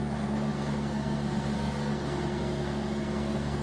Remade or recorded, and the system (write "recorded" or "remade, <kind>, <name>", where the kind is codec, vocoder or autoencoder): remade, codec, SNAC